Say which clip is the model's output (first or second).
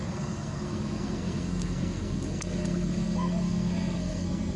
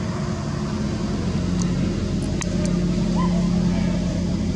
first